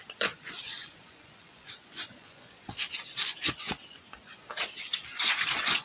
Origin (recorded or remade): remade